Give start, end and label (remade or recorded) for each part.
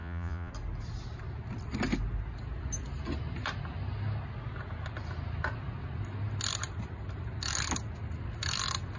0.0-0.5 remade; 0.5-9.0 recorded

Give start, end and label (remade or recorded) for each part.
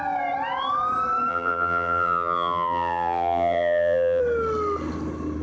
0.0-1.3 recorded; 1.3-4.2 remade; 4.2-5.4 recorded